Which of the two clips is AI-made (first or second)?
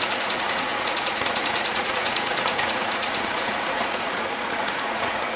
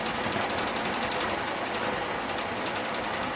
first